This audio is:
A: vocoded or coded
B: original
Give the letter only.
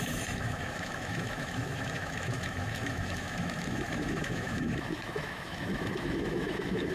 A